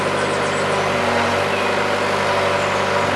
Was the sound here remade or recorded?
recorded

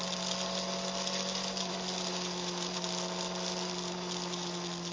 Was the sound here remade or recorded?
recorded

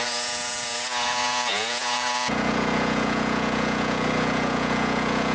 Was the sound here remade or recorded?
remade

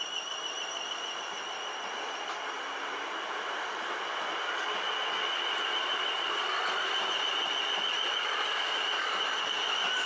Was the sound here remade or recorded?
recorded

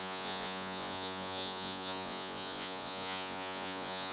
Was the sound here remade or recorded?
remade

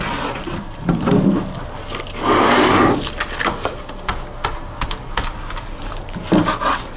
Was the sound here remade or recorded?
recorded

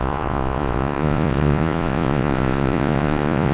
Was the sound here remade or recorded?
remade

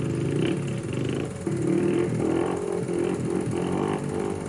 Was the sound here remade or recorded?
recorded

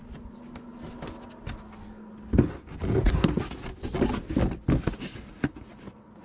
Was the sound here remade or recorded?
recorded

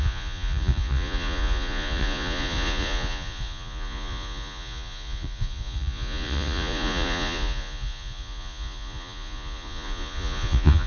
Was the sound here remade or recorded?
remade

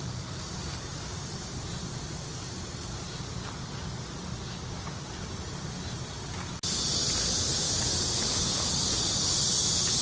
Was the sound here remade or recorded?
recorded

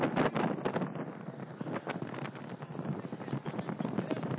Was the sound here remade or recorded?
recorded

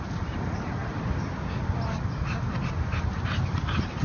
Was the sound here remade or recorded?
recorded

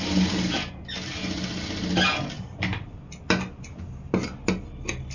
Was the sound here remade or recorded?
recorded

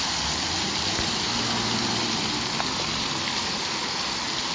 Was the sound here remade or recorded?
recorded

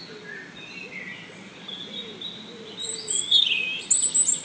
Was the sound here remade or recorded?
recorded